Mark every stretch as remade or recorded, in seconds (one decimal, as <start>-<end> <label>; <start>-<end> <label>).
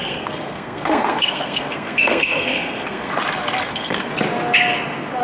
0.0-3.1 remade; 3.1-3.6 recorded; 3.6-4.1 remade; 4.1-5.2 recorded